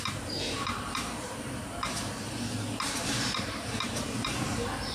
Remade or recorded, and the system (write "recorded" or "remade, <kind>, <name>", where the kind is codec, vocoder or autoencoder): remade, vocoder, BigVGAN v2